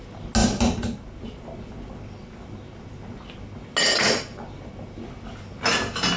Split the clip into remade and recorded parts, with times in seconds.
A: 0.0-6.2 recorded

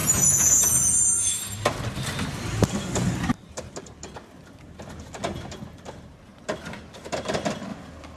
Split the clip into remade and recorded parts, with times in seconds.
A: 0.0-1.3 remade; 1.3-8.2 recorded

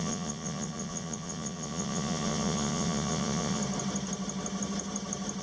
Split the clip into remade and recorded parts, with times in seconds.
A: 0.0-3.6 remade; 3.6-5.4 recorded